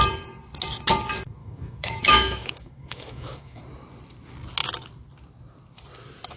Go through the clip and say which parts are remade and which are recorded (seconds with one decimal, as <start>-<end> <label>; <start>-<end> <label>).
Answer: 0.0-1.4 recorded; 1.4-3.6 remade; 3.6-6.4 recorded